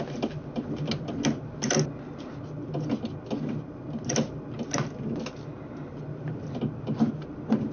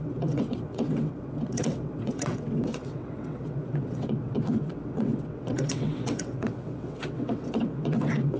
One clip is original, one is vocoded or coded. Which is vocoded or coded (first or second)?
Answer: second